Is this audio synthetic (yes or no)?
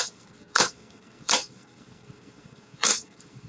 yes